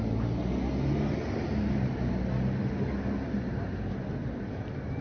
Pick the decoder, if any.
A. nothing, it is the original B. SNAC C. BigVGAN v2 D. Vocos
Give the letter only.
A